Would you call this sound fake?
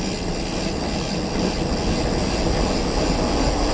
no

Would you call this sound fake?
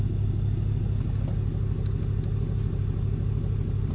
no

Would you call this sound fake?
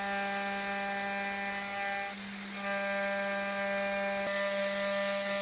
no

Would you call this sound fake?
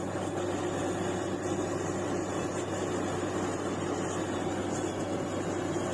no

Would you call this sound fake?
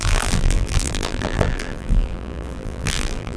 yes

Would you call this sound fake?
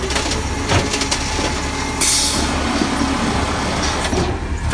no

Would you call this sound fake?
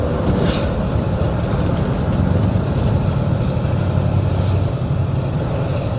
yes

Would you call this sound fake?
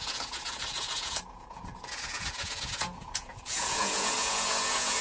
yes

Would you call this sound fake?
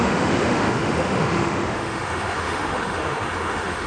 yes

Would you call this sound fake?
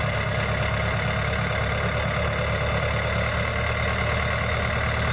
no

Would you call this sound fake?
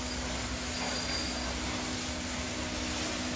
no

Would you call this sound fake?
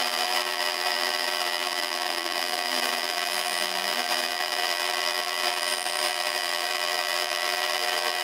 yes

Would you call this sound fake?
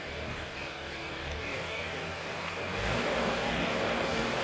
yes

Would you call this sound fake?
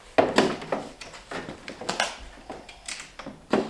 no